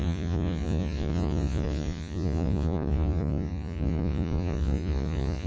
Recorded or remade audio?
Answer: remade